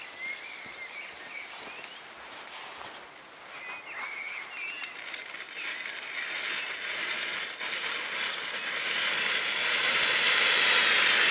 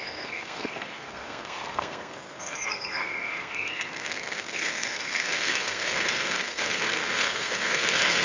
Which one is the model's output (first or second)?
second